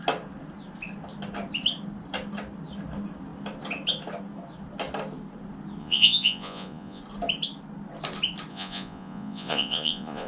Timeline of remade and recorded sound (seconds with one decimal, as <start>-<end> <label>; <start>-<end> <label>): 0.0-5.8 recorded; 5.8-7.0 remade; 7.0-8.5 recorded; 8.5-10.3 remade